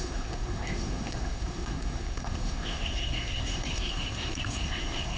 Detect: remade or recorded remade